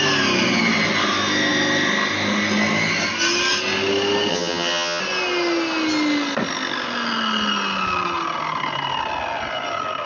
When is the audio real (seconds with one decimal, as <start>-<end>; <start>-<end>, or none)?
0.0-4.3; 5.0-10.1